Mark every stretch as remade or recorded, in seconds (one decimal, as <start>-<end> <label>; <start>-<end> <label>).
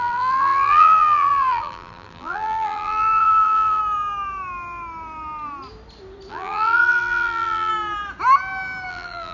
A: 0.0-3.8 remade; 3.8-6.3 recorded; 6.3-7.7 remade; 7.7-8.9 recorded; 8.9-9.3 remade